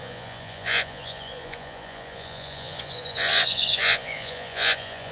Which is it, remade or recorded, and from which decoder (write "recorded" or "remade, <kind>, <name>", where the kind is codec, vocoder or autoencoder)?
remade, vocoder, Vocos